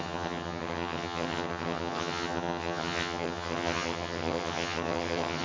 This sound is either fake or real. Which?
fake